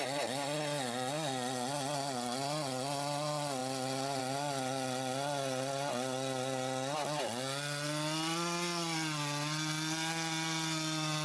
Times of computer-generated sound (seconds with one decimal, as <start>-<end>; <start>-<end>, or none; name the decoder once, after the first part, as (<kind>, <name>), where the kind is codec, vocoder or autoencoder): none